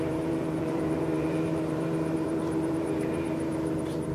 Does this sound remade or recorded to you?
remade